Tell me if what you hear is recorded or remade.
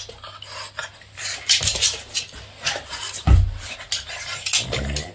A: recorded